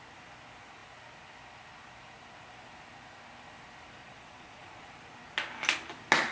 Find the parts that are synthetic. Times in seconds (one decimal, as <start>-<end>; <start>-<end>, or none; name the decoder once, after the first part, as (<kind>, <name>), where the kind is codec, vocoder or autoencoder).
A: 4.0-4.9 (vocoder, Vocos)